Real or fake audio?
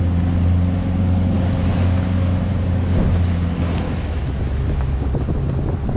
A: real